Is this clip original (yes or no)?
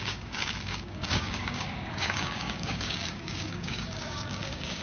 no